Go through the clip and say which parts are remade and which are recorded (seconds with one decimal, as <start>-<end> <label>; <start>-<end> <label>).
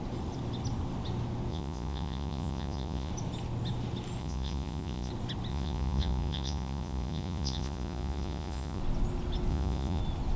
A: 0.0-1.5 recorded; 1.5-3.1 remade; 3.1-4.2 recorded; 4.2-5.1 remade; 5.1-5.5 recorded; 5.5-8.8 remade; 8.8-9.5 recorded; 9.5-10.0 remade; 10.0-10.4 recorded